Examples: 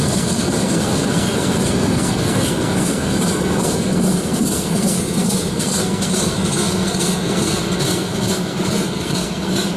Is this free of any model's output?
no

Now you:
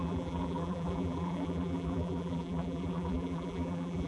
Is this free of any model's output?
no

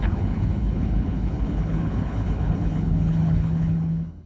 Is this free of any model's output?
no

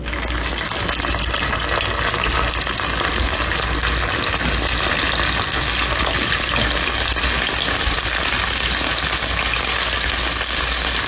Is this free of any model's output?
yes